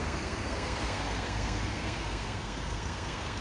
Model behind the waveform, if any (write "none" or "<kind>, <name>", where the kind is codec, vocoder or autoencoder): codec, SNAC